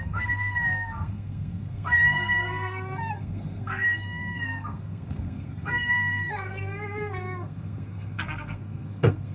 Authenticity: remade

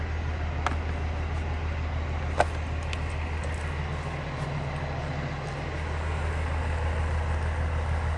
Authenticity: recorded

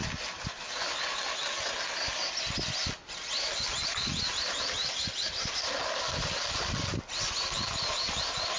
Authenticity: recorded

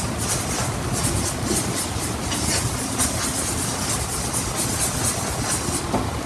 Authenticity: recorded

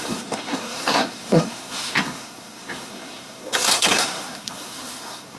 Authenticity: remade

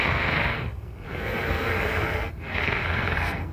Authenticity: remade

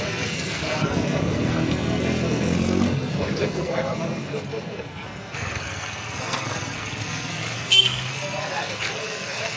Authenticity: remade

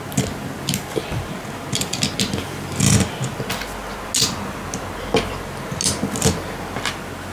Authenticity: recorded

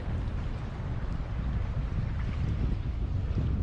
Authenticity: recorded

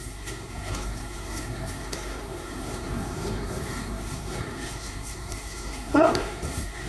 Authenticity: remade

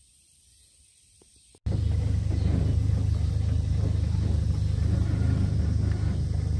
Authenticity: recorded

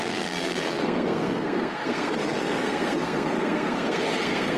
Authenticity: remade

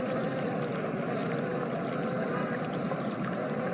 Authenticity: recorded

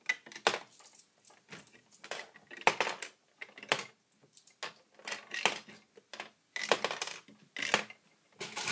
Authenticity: recorded